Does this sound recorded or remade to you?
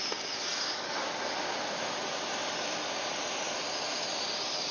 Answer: recorded